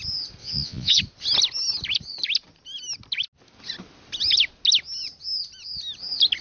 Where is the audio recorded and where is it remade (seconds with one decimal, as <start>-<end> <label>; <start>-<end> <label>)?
0.0-0.4 recorded; 0.4-1.0 remade; 1.0-6.4 recorded